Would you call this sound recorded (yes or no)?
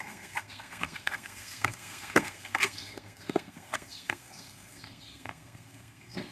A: no